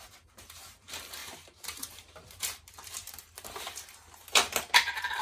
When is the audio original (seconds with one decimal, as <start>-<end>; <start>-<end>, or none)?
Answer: none